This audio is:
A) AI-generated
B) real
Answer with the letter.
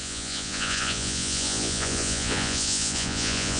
A